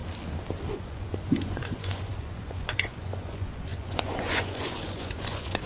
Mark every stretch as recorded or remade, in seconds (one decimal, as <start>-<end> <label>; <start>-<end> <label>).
0.0-0.7 recorded; 0.7-5.7 remade